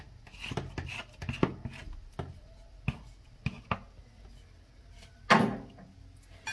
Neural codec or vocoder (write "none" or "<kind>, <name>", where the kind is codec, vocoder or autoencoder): none